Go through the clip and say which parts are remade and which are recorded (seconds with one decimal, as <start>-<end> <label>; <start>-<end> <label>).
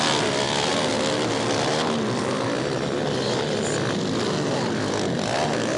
0.0-5.8 recorded